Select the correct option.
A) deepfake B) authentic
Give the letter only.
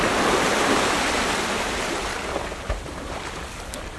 B